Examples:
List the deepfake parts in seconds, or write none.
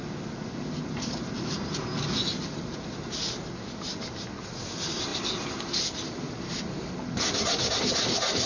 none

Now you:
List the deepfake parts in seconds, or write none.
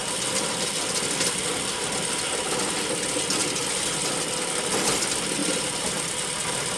0.0-2.0 (vocoder, BigVGAN v2); 5.4-6.1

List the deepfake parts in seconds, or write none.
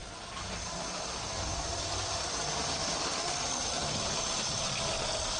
none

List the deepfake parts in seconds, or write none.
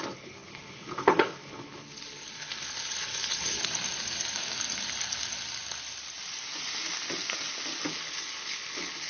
0.0-3.6 (codec, HILCodec); 7.9-9.1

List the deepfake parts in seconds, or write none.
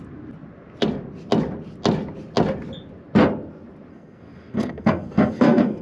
3.9-5.8 (codec, SNAC)